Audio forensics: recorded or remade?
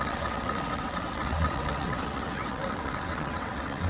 remade